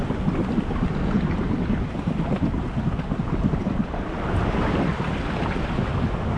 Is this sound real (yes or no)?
yes